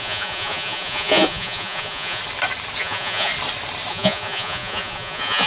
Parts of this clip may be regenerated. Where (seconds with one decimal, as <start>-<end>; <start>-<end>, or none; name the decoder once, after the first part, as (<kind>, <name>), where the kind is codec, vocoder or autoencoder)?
0.0-2.2 (vocoder, Vocos); 2.8-3.3; 3.9-5.5